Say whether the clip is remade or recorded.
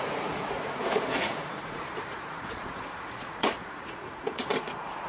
remade